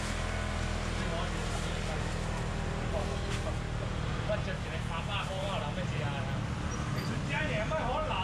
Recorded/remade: recorded